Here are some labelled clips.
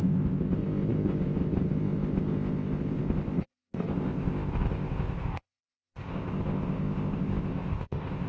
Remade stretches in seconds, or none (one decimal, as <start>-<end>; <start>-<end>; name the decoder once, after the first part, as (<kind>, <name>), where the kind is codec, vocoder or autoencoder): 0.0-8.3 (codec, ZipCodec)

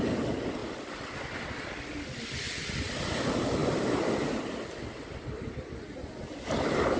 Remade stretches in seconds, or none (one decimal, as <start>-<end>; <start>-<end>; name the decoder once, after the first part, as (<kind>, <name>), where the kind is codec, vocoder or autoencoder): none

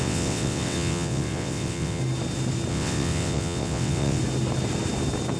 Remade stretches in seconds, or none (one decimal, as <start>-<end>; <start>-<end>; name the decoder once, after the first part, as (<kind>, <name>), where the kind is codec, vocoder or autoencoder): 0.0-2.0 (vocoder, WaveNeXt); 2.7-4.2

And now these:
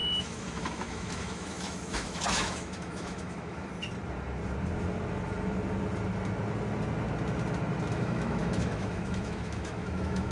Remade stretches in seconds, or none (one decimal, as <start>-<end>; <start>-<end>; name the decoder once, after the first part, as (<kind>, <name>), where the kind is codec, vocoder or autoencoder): 0.0-3.7 (autoencoder, DAC-VAE); 7.9-10.3